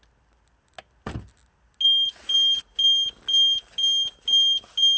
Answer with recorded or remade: recorded